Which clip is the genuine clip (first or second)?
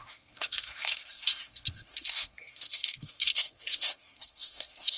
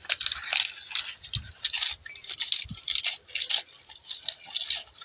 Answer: second